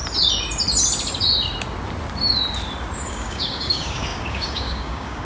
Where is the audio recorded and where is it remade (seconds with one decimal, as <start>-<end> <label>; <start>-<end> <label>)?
0.0-3.1 recorded; 3.1-5.2 remade